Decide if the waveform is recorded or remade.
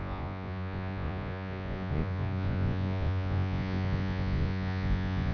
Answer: remade